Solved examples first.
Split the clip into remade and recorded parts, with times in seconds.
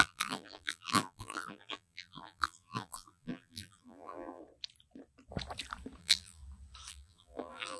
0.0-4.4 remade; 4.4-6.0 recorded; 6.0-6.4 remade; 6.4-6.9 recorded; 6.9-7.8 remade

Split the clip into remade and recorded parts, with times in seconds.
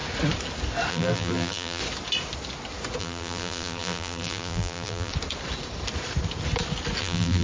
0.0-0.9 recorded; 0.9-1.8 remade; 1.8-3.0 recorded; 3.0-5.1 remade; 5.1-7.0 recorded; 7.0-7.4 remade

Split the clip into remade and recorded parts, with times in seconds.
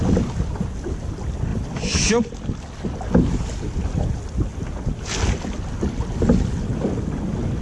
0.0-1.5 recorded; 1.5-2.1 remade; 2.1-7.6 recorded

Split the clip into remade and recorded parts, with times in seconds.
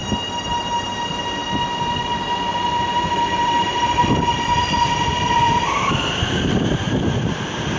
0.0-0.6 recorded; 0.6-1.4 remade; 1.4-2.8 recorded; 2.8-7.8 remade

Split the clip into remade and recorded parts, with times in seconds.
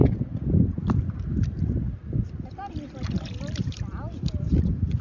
0.0-2.0 recorded; 2.0-4.3 remade; 4.3-5.0 recorded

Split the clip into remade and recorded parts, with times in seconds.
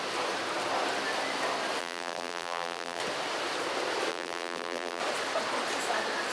0.0-1.8 recorded; 1.8-3.0 remade; 3.0-4.1 recorded; 4.1-5.0 remade; 5.0-6.3 recorded